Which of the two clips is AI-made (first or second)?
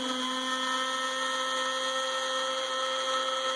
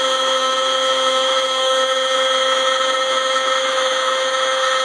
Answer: second